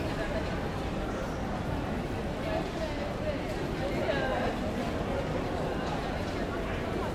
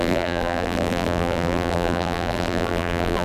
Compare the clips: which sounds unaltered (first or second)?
first